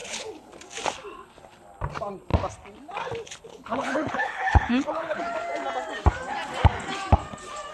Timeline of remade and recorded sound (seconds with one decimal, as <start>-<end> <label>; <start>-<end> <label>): 0.0-0.5 remade; 0.5-3.5 recorded; 3.5-5.2 remade; 5.2-7.7 recorded